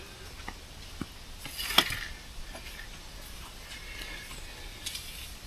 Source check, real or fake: real